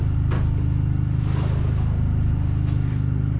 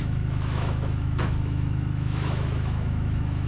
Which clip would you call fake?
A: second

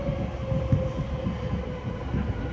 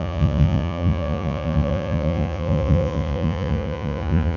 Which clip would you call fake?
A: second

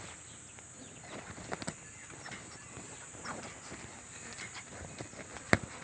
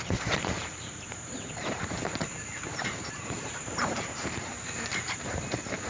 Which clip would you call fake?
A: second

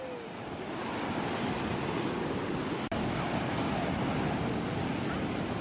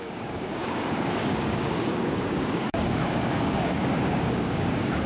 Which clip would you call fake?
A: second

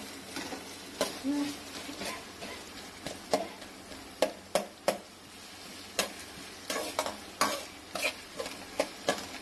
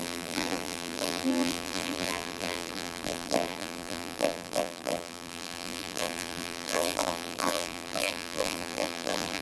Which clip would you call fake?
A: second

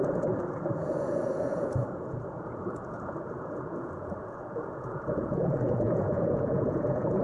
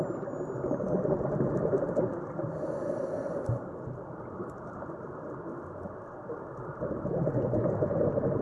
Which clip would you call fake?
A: first